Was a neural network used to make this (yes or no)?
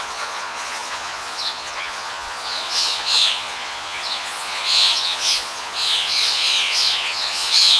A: yes